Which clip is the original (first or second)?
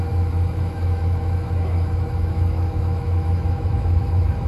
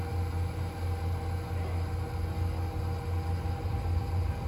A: second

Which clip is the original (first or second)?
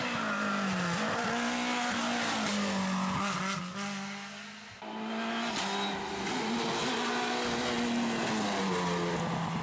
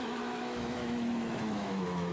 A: first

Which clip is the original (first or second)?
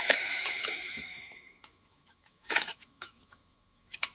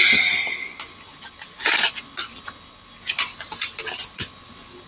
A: second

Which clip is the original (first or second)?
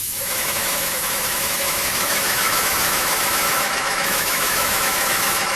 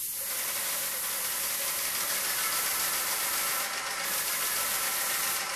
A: second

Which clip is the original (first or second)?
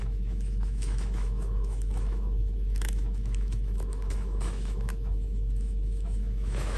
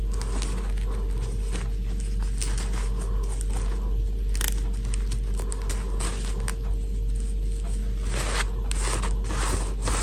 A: second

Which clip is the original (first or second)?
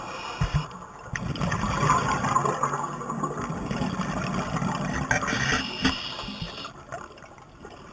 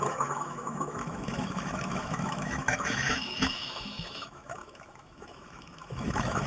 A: first